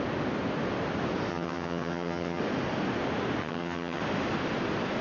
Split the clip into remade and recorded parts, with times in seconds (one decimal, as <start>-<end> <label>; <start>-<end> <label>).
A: 0.0-1.3 recorded; 1.3-2.4 remade; 2.4-3.4 recorded; 3.4-4.0 remade; 4.0-5.0 recorded